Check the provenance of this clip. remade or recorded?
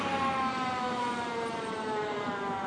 remade